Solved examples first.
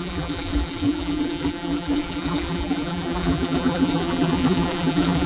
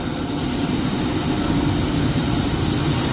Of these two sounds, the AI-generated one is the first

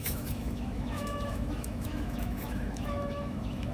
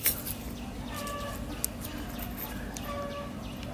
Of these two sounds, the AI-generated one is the first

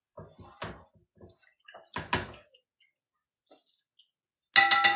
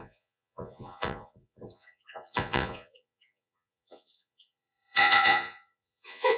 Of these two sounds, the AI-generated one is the second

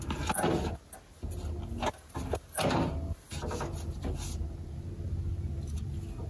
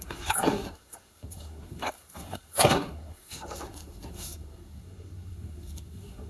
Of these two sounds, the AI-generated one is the second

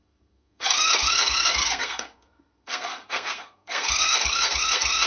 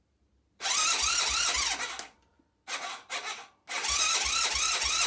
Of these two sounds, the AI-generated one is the first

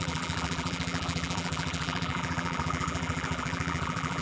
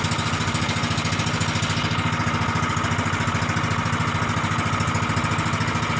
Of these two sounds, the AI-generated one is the first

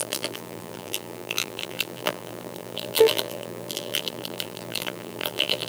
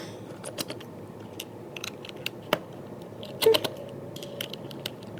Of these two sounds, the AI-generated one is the first